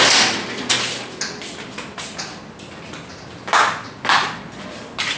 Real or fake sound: real